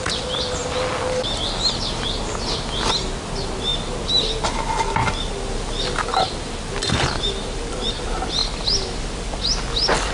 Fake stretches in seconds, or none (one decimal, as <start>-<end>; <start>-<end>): none